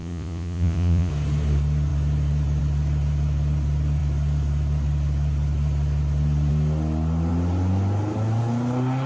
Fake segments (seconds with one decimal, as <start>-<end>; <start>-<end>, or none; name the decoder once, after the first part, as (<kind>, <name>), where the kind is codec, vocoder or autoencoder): 0.0-1.1 (vocoder, Vocos)